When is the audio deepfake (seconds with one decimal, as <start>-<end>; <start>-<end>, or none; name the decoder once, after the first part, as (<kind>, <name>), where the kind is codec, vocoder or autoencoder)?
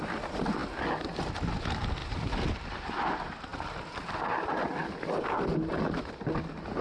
none